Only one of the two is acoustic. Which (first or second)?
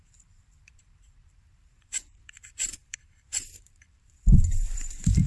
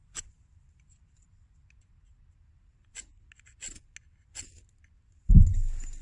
second